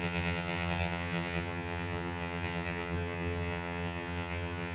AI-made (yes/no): yes